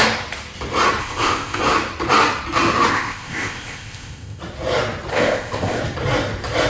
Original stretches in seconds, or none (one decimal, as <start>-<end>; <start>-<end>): 0.0-1.0; 1.6-2.9; 4.4-5.1; 5.8-6.7